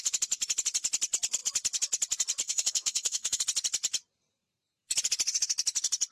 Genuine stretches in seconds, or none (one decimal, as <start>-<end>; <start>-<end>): 0.0-2.4; 3.4-6.1